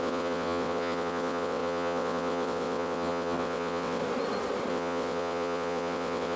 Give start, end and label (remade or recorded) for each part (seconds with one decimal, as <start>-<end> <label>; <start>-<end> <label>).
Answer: 0.0-4.0 remade; 4.0-4.7 recorded; 4.7-6.4 remade